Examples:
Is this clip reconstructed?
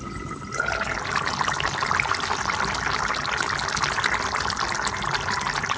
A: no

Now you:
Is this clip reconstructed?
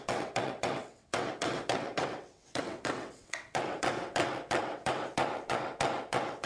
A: yes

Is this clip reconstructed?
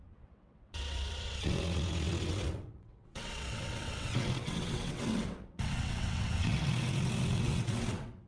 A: yes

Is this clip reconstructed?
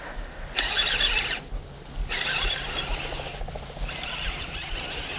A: no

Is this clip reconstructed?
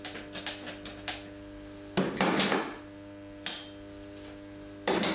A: no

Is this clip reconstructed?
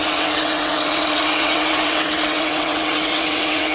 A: yes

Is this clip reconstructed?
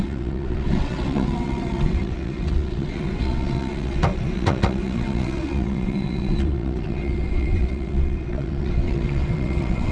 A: yes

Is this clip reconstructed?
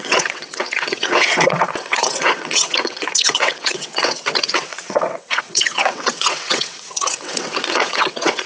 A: yes